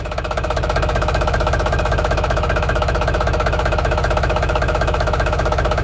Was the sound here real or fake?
fake